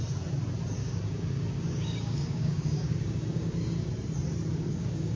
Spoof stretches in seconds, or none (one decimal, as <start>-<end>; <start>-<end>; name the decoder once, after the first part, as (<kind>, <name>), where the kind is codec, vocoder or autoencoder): 0.8-3.9 (codec, DAC); 4.5-5.2